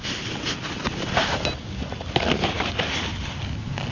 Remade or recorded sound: recorded